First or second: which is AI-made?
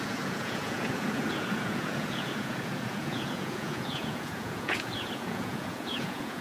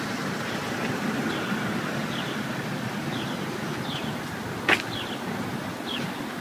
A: first